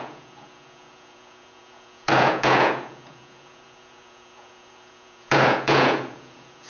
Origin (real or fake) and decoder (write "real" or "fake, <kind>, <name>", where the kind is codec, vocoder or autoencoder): fake, vocoder, Vocos